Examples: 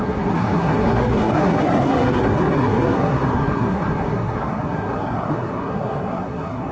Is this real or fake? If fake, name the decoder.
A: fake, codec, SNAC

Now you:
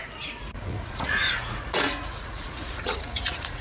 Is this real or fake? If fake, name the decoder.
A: fake, vocoder, Vocos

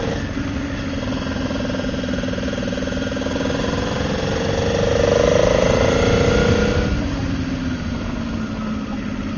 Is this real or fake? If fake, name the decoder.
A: real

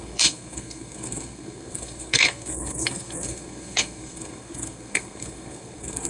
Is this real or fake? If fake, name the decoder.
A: fake, codec, SNAC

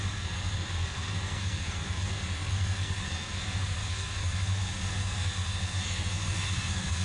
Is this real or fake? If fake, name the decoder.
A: fake, codec, SNAC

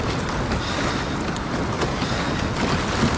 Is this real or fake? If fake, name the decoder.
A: real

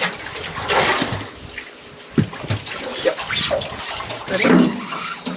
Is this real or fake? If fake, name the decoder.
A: real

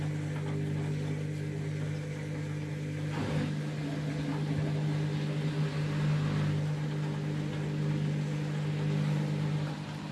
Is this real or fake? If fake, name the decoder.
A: real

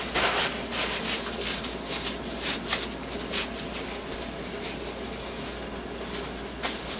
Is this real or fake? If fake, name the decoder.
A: real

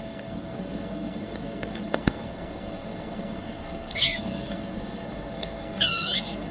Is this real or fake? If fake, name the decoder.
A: fake, codec, SNAC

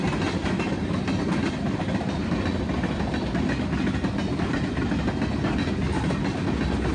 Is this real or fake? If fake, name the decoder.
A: real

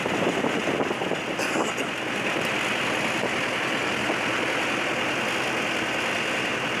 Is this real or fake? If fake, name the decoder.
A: real